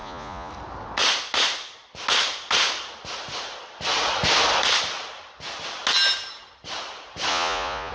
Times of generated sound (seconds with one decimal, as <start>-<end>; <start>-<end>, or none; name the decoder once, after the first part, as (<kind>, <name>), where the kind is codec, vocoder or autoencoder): 0.0-0.5 (vocoder, Vocos); 7.3-7.9